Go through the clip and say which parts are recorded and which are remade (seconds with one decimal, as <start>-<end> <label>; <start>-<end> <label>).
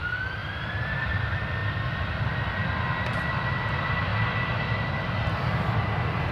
0.0-1.6 remade; 1.6-2.2 recorded; 2.2-4.1 remade; 4.1-4.7 recorded; 4.7-6.3 remade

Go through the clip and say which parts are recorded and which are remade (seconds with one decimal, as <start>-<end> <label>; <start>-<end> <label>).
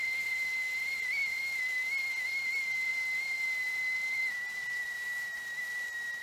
0.0-6.2 recorded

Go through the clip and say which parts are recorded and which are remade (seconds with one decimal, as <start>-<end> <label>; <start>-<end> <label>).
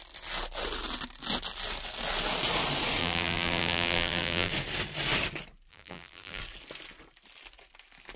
0.0-3.0 recorded; 3.0-4.5 remade; 4.5-5.7 recorded; 5.7-6.4 remade; 6.4-8.2 recorded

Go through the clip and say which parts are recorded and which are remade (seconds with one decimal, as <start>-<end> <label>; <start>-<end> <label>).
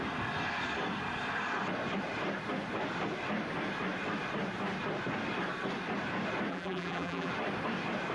0.0-6.5 recorded; 6.5-7.3 remade; 7.3-8.1 recorded